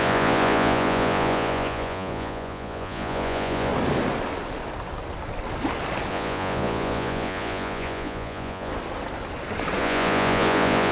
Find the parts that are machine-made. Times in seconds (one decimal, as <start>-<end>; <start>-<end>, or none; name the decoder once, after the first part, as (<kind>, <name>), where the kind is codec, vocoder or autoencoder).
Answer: 0.0-3.7 (vocoder, Vocos); 6.1-8.7; 9.8-10.9